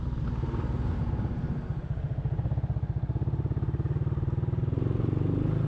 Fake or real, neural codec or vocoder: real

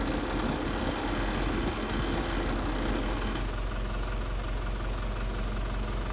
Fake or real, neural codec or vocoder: real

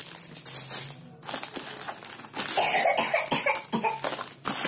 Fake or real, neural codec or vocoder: real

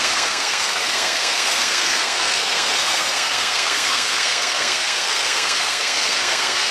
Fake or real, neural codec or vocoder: fake, codec, SNAC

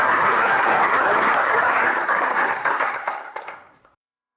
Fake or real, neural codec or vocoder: fake, codec, SNAC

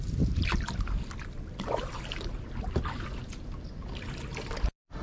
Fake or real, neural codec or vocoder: real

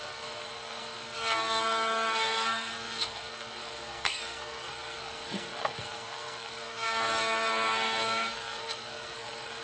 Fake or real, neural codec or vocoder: fake, codec, SNAC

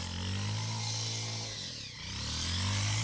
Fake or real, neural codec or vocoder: real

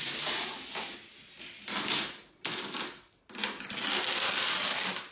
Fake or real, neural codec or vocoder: real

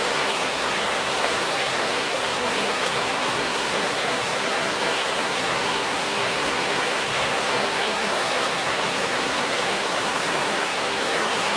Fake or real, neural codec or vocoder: fake, codec, SNAC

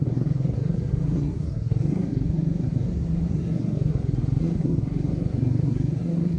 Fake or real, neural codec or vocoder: fake, codec, SNAC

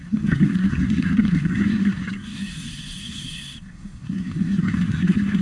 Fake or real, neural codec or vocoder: fake, codec, SNAC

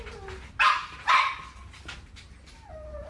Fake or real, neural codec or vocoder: real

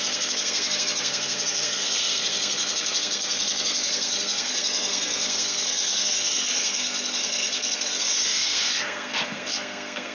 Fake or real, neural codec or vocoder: fake, codec, SNAC